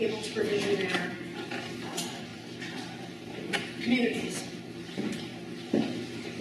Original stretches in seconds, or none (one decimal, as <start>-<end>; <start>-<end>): 5.3-6.0